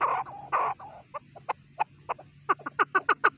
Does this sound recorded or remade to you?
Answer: recorded